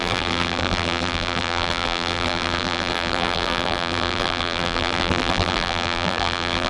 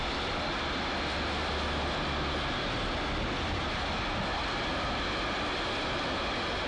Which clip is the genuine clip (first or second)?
second